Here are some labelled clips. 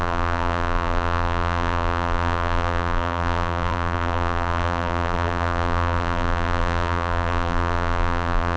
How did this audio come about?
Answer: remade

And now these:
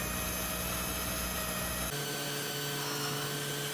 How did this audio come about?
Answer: recorded